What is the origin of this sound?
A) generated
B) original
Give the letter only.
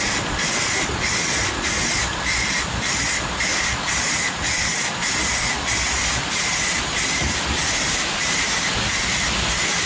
B